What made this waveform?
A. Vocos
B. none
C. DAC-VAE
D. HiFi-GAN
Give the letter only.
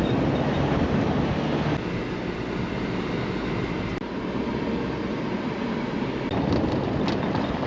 B